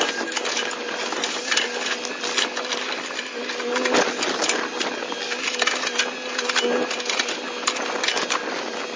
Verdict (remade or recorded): recorded